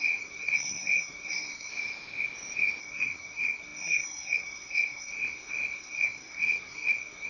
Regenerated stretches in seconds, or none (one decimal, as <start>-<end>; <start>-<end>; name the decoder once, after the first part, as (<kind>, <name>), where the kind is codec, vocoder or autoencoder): 0.0-1.7 (codec, SNAC); 2.8-7.3